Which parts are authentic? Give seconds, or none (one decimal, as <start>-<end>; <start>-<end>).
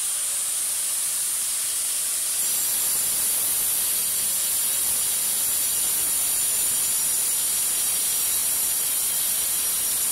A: 0.0-8.4; 9.6-10.1